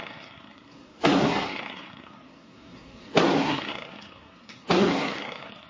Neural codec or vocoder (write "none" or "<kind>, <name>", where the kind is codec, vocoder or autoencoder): codec, SNAC